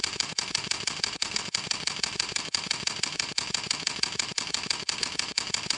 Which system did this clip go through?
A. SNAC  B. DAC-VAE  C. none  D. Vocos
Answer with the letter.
B